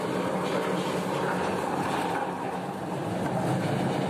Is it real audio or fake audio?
real